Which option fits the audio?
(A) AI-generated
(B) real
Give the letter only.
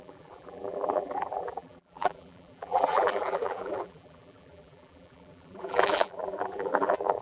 A